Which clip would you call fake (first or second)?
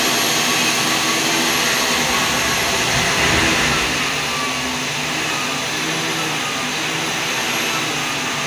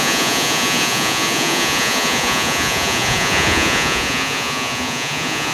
second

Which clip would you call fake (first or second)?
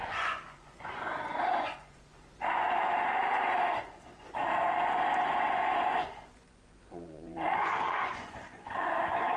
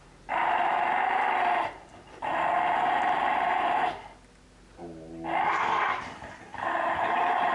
first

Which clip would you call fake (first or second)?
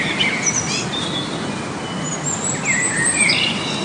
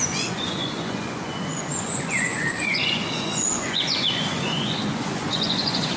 second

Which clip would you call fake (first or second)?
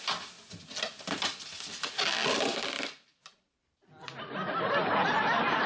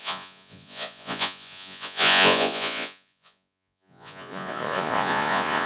second